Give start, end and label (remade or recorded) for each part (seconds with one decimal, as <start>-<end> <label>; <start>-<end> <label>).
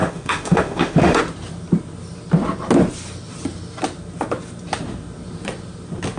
0.0-1.2 remade; 1.2-6.2 recorded